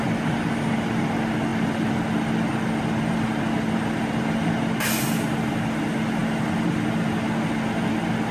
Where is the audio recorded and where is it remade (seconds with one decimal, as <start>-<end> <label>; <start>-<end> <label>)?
0.0-8.3 recorded